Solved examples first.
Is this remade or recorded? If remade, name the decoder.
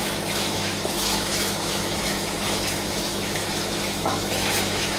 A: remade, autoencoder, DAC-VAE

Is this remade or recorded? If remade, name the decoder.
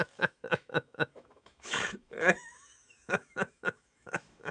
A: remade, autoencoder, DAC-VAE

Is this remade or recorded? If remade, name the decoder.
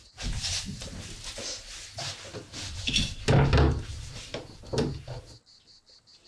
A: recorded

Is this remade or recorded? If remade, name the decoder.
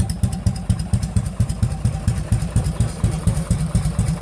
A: remade, vocoder, BigVGAN v2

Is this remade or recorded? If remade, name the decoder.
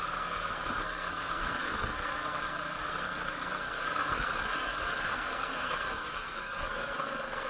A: remade, codec, SNAC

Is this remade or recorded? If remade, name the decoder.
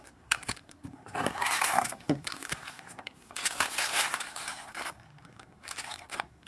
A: remade, codec, SNAC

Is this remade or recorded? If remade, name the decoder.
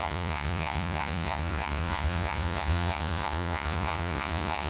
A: remade, vocoder, Vocos